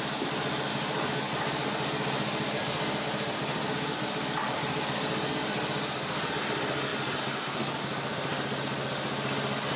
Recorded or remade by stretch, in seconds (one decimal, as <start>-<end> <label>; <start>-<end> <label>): 0.0-0.7 recorded; 0.7-1.3 remade; 1.3-9.8 recorded